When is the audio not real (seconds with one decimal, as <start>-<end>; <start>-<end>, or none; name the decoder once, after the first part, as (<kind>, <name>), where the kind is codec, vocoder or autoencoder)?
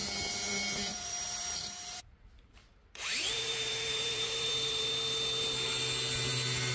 0.9-4.9 (vocoder, BigVGAN v2)